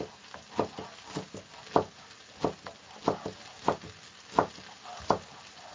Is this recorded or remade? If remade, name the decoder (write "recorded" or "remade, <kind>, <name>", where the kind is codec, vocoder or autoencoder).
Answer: recorded